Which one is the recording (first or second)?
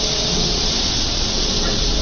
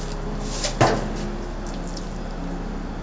second